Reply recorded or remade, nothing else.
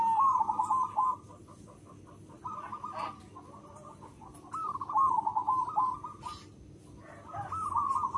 recorded